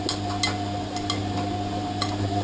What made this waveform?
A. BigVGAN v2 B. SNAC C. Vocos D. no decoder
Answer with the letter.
D